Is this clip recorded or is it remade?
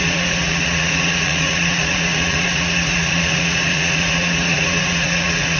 remade